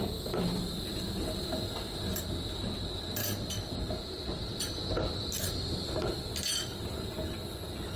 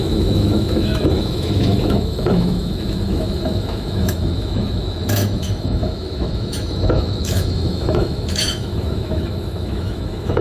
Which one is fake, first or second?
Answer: second